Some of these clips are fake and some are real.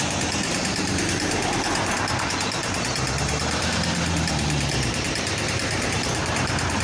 fake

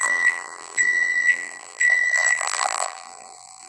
fake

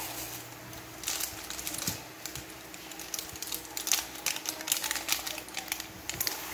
real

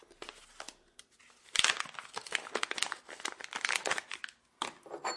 real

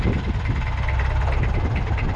real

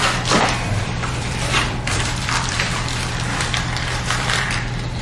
fake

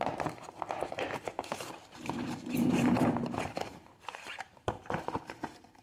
fake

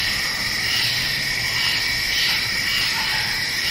fake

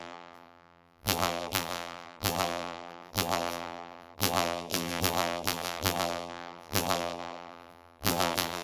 fake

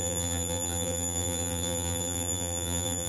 fake